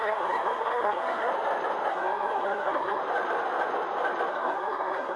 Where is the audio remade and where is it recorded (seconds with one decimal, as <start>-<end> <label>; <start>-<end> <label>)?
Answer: 0.0-1.3 remade; 1.3-1.9 recorded; 1.9-3.0 remade; 3.0-4.3 recorded; 4.3-5.2 remade